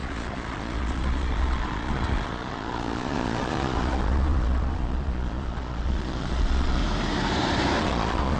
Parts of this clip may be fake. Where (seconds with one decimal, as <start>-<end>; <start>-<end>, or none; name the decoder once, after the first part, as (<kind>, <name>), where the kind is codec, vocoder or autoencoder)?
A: 0.0-6.8 (vocoder, Vocos); 7.8-8.4